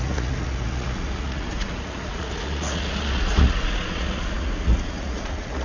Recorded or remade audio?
remade